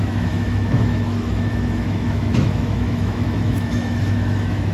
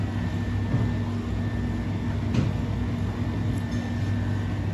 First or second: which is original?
second